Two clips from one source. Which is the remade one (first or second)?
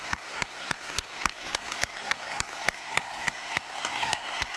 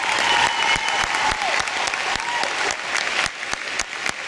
first